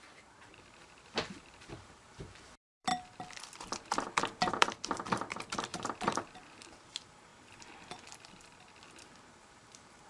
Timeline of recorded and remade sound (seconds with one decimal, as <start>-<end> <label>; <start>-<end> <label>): 0.0-2.9 remade; 2.9-4.5 recorded; 4.5-7.3 remade; 7.3-9.3 recorded; 9.3-10.1 remade

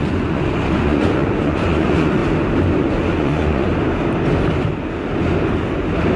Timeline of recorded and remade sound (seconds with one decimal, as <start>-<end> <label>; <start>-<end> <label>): 0.0-2.2 remade; 2.2-2.8 recorded; 2.8-3.7 remade; 3.7-6.2 recorded

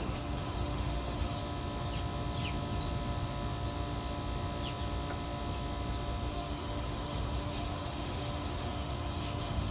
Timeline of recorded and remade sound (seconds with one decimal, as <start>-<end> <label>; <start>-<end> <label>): 0.0-1.4 remade; 1.4-6.3 recorded; 6.3-9.7 remade

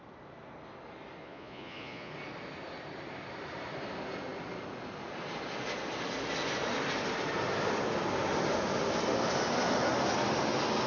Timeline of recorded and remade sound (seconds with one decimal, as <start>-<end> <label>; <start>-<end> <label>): 0.0-1.2 recorded; 1.2-2.1 remade; 2.1-10.9 recorded

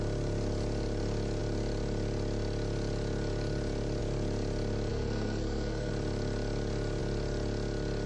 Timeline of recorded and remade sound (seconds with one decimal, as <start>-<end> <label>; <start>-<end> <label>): 0.0-4.9 recorded; 4.9-5.9 remade; 5.9-8.1 recorded

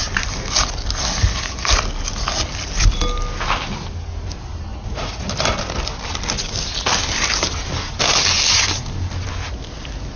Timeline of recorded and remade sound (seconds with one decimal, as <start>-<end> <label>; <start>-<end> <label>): 0.0-4.7 recorded; 4.7-5.3 remade; 5.3-10.2 recorded

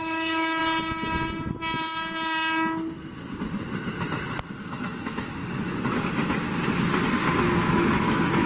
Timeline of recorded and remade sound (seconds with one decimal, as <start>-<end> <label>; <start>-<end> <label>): 0.0-0.6 remade; 0.6-4.6 recorded; 4.6-5.4 remade; 5.4-7.4 recorded; 7.4-8.5 remade